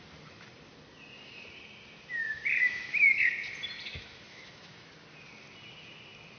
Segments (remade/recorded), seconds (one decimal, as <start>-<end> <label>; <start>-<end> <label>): 0.0-2.2 recorded; 2.2-3.3 remade; 3.3-3.9 recorded; 3.9-4.9 remade; 4.9-6.4 recorded